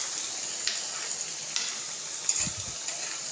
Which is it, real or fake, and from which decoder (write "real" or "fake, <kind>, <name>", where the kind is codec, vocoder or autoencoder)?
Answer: real